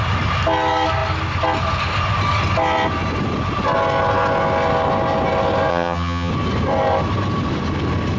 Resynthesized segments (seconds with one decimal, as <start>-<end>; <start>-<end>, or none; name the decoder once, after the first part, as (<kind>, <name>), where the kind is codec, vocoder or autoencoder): 5.7-6.3 (vocoder, HiFi-GAN)